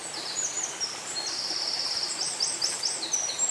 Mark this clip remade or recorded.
recorded